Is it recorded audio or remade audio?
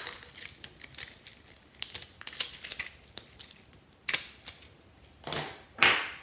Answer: recorded